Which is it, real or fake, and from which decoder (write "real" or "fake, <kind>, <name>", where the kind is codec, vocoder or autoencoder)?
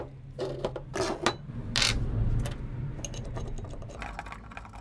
real